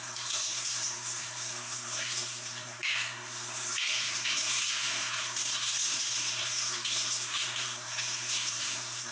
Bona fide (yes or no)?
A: no